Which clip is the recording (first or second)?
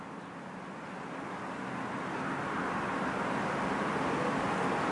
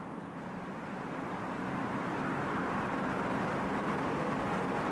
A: first